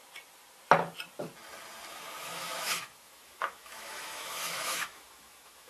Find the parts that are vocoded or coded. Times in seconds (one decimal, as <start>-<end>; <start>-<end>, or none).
2.2-5.7